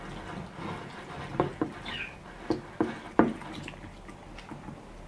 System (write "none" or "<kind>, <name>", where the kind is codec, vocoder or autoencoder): none